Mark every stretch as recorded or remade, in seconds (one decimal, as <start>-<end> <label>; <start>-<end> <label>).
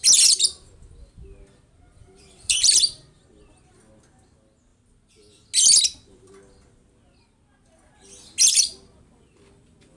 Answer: 0.0-2.0 recorded; 2.0-2.8 remade; 2.8-10.0 recorded